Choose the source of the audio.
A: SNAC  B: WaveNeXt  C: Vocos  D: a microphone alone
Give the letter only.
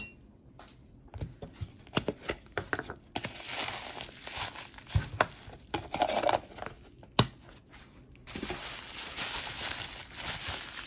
D